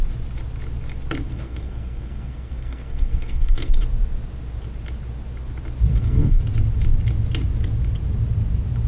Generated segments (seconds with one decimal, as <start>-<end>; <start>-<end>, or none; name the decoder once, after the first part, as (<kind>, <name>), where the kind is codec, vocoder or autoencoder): 1.3-3.7 (codec, SNAC); 5.9-6.4